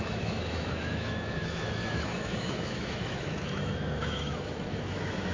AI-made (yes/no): yes